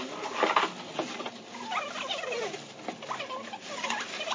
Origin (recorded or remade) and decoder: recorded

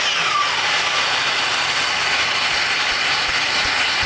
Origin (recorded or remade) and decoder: recorded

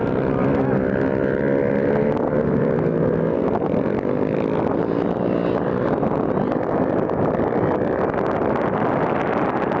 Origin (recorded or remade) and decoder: recorded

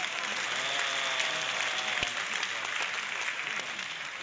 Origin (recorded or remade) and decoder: recorded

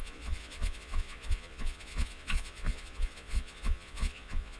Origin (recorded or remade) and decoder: remade, vocoder, Vocos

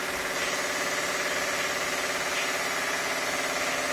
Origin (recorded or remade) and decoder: recorded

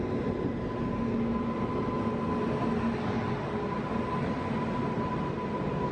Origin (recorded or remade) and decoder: recorded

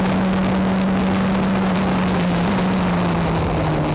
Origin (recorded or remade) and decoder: recorded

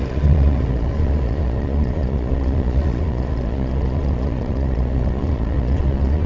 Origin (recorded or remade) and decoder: remade, vocoder, Vocos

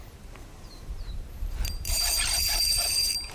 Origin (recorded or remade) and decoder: remade, vocoder, BigVGAN v2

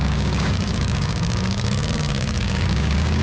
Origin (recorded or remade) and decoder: remade, codec, DAC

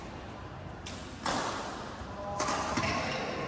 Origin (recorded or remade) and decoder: recorded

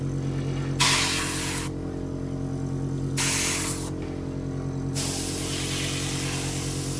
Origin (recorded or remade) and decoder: recorded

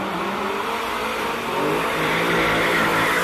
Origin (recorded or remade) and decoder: recorded